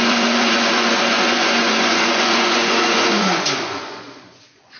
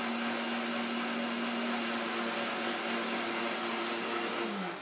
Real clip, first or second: second